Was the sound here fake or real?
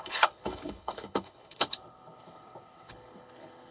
fake